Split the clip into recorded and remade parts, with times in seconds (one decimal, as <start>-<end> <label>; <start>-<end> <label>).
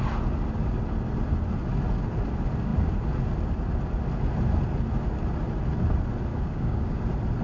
0.0-6.3 recorded; 6.3-7.0 remade; 7.0-7.4 recorded